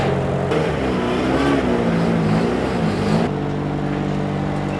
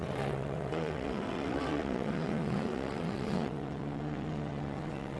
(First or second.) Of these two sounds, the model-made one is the second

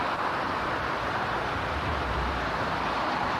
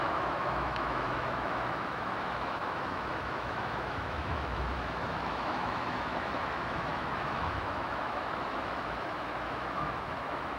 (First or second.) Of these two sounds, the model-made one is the second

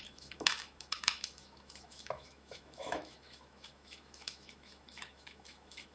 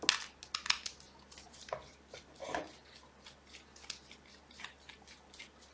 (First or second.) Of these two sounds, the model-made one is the first